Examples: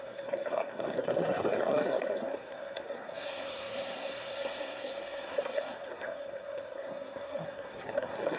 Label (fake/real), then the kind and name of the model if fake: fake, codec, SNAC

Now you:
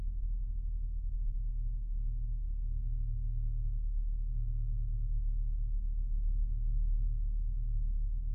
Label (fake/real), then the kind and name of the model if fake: real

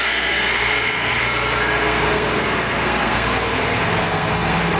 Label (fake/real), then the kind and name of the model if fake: fake, codec, SNAC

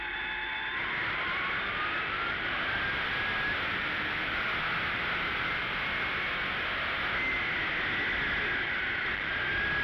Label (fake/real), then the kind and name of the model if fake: real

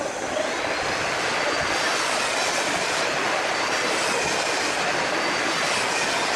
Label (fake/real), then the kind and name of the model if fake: real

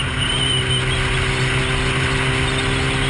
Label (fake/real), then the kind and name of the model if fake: real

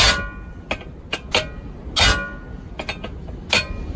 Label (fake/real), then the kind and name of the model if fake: real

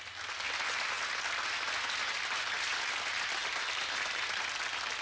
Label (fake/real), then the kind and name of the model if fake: real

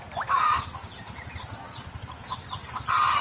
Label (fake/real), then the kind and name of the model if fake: real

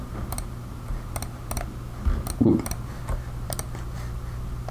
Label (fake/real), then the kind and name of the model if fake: real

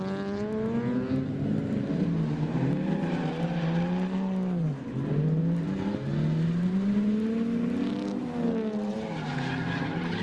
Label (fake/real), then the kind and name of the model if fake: real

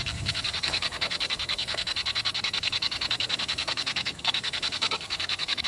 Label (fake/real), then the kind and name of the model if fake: fake, codec, SNAC